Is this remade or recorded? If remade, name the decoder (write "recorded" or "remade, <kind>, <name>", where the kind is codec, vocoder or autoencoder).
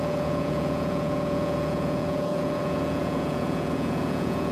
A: remade, vocoder, Vocos